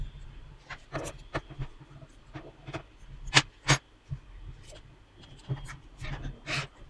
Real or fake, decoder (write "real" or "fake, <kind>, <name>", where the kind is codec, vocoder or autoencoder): real